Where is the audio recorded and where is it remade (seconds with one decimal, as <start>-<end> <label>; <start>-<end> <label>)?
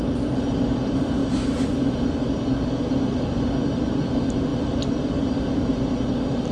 0.0-6.5 recorded